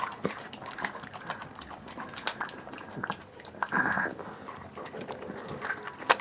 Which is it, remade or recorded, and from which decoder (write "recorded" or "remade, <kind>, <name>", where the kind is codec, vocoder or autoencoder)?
recorded